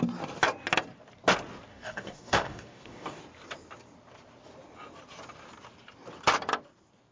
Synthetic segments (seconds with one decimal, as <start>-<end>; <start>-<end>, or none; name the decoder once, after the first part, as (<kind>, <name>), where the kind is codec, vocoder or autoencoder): 1.7-3.2 (codec, DAC)